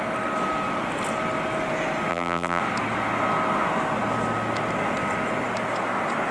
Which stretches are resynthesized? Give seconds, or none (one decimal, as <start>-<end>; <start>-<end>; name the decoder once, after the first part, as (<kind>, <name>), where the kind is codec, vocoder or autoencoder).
2.1-2.6 (vocoder, BigVGAN v2)